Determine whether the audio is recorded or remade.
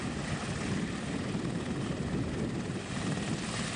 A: recorded